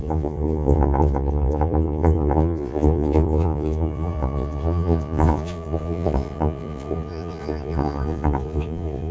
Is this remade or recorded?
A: remade